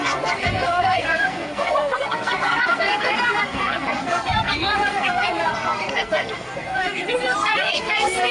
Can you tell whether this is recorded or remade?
remade